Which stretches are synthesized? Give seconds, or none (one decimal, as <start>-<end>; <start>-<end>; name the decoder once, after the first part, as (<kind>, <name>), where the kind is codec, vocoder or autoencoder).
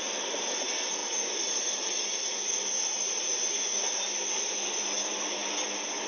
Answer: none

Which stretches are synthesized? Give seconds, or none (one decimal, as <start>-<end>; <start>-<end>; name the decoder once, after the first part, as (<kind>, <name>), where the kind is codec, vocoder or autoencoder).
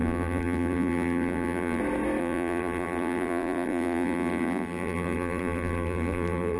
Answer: 0.0-1.8 (vocoder, BigVGAN v2); 2.2-6.6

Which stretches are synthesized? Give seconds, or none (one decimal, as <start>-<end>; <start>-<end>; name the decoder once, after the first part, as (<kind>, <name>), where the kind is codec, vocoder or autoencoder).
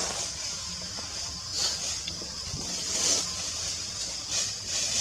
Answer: none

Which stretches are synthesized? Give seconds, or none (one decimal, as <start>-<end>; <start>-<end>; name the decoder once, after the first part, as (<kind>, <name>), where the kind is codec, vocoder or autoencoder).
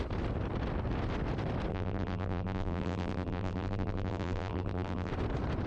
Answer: 1.7-5.1 (vocoder, BigVGAN v2)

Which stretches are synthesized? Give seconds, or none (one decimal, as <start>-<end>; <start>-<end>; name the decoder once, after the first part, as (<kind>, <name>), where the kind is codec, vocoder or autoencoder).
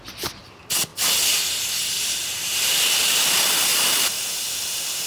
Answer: 3.7-4.3 (vocoder, BigVGAN v2)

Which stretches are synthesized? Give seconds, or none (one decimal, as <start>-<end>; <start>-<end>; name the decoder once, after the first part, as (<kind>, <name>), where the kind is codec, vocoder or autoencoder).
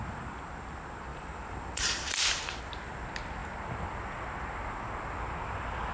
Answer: 1.1-2.6 (vocoder, BigVGAN v2)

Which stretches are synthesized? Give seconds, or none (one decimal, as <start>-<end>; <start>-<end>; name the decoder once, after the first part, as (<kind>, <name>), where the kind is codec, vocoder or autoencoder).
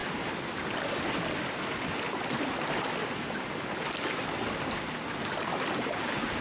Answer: none